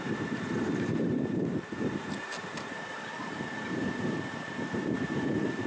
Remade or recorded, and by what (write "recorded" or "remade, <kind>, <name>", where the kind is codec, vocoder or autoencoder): remade, vocoder, BigVGAN v2